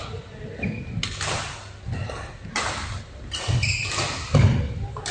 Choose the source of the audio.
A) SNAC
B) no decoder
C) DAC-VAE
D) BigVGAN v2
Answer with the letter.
B